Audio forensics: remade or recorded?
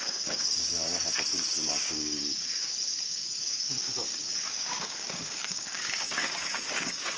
remade